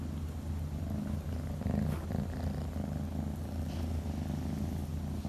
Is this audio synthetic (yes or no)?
no